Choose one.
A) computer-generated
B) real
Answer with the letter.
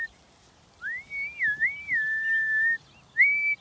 B